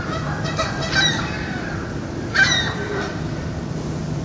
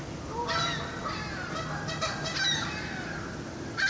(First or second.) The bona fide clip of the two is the second